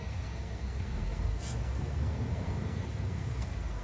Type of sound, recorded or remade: remade